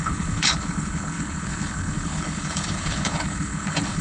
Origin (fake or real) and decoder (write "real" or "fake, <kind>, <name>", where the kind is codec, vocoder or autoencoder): fake, codec, HILCodec